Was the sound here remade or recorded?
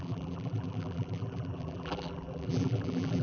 remade